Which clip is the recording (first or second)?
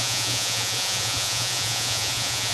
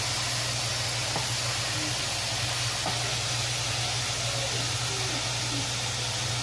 second